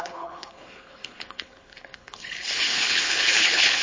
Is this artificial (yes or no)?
yes